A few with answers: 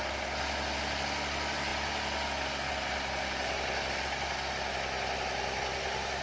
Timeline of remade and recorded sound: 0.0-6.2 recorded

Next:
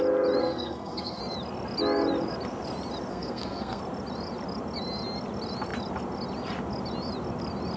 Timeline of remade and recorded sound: 0.0-0.4 recorded; 0.4-1.2 remade; 1.2-3.1 recorded; 3.1-3.8 remade; 3.8-7.8 recorded